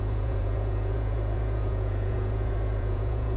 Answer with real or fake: fake